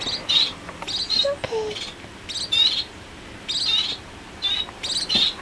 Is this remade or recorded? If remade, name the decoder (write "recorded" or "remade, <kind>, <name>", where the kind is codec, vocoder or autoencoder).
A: recorded